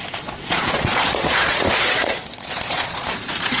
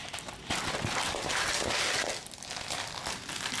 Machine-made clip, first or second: first